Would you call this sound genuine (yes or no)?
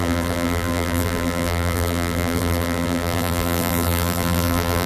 no